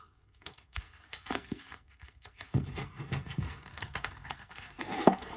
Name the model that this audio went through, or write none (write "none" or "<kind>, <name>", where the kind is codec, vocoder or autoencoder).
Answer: codec, SNAC